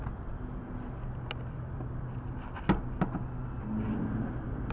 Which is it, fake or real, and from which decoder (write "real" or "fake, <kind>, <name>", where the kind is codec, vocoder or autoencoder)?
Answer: real